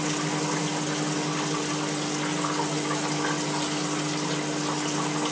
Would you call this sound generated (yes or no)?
no